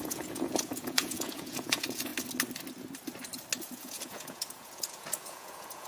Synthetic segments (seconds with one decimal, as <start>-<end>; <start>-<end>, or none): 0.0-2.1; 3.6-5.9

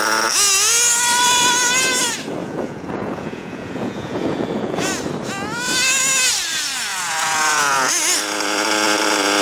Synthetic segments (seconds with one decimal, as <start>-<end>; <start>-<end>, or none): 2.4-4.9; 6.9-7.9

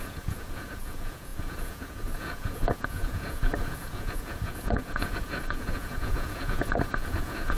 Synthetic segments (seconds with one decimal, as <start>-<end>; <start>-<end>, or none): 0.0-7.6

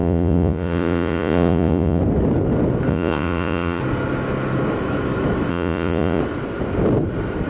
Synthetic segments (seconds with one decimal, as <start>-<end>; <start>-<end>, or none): 0.0-2.0; 2.9-3.8; 5.5-6.2

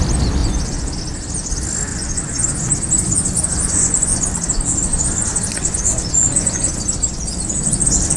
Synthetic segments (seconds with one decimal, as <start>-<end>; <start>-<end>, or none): 0.4-1.0; 1.9-4.3; 4.9-6.9

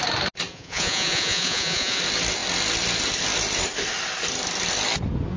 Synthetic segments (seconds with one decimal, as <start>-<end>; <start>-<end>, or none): 0.5-2.0

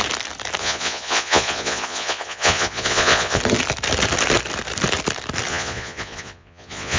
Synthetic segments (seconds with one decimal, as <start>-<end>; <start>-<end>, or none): 0.6-3.4; 5.5-7.0

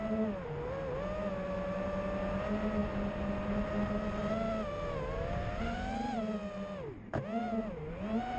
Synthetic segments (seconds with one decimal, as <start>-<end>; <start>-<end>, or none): none